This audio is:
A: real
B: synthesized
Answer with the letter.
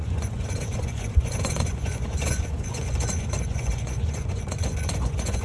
B